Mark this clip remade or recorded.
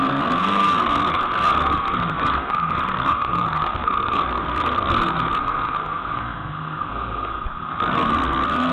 remade